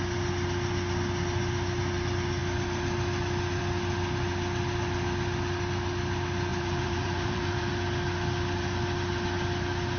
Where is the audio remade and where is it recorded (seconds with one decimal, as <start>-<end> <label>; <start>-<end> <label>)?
0.0-6.5 recorded; 6.5-7.7 remade; 7.7-10.0 recorded